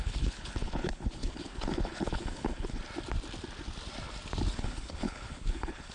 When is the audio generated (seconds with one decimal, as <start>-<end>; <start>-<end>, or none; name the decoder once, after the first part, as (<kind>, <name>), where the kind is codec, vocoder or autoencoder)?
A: 0.0-2.8 (codec, HILCodec); 4.5-5.9